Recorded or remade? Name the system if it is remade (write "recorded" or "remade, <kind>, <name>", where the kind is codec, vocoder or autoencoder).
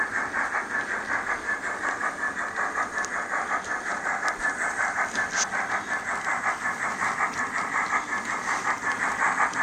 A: recorded